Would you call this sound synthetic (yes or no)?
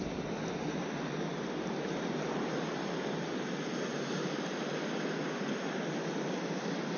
no